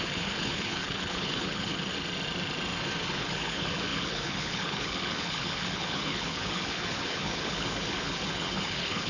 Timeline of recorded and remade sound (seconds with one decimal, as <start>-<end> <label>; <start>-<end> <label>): 0.0-1.8 remade; 1.8-3.1 recorded; 3.1-9.1 remade